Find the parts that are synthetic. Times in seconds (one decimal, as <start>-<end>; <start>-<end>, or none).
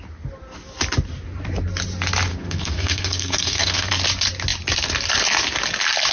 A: 2.3-3.9